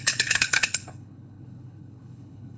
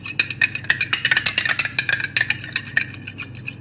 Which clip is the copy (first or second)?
first